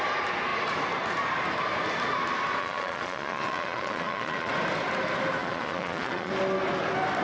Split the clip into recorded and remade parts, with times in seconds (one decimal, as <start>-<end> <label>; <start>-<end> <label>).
0.0-2.6 recorded; 2.6-4.5 remade; 4.5-5.4 recorded; 5.4-6.3 remade; 6.3-7.2 recorded